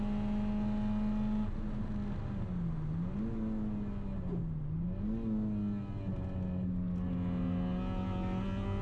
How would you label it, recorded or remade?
recorded